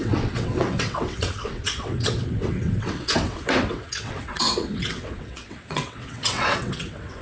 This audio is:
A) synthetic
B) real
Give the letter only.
A